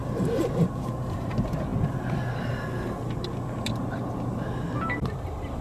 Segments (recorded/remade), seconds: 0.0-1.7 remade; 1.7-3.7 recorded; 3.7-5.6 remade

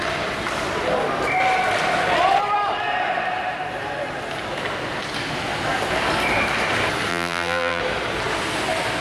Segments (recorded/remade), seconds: 0.0-7.1 recorded; 7.1-7.8 remade; 7.8-9.0 recorded

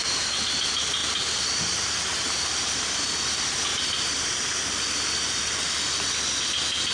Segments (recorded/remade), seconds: 0.0-6.9 recorded

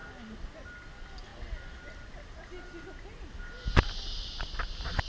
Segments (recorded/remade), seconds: 0.0-5.1 recorded

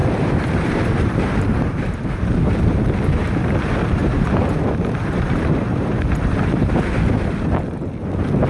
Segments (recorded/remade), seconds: 0.0-2.9 remade; 2.9-4.0 recorded; 4.0-6.9 remade; 6.9-8.5 recorded